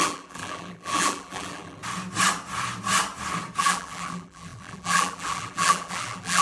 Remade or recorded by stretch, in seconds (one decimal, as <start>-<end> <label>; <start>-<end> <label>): 0.0-1.8 remade; 1.8-3.6 recorded; 3.6-6.4 remade